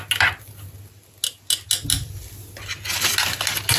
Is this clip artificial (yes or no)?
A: no